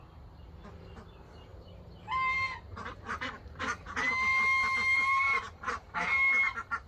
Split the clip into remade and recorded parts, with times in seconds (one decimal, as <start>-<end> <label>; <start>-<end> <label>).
0.0-1.5 recorded; 1.5-4.0 remade; 4.0-4.6 recorded; 4.6-5.7 remade; 5.7-6.9 recorded